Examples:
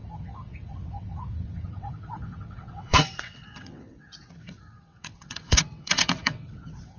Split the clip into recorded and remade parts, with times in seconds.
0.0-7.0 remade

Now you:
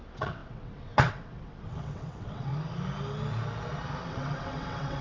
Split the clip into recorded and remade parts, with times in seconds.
0.0-2.5 remade; 2.5-4.0 recorded; 4.0-5.0 remade

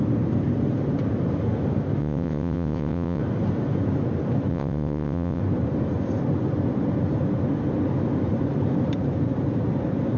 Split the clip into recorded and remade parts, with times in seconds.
0.0-2.0 recorded; 2.0-3.2 remade; 3.2-4.5 recorded; 4.5-5.4 remade; 5.4-10.2 recorded

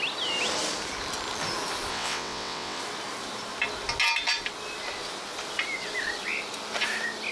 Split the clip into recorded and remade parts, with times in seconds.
0.0-1.9 recorded; 1.9-2.8 remade; 2.8-7.3 recorded

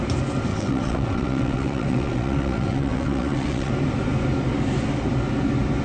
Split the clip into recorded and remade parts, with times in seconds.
0.0-0.5 recorded; 0.5-3.7 remade; 3.7-5.8 recorded

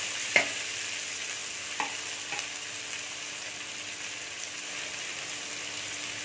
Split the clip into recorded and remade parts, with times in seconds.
0.0-6.2 recorded

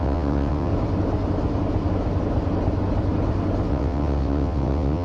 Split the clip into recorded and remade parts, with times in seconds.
0.0-0.7 remade; 0.7-3.7 recorded; 3.7-5.0 remade

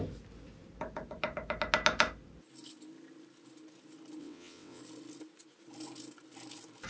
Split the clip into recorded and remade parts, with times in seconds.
0.0-4.2 recorded; 4.2-4.8 remade; 4.8-6.9 recorded